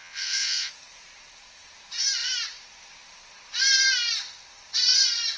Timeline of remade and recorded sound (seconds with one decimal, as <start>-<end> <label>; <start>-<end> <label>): 0.0-0.7 remade; 0.7-5.4 recorded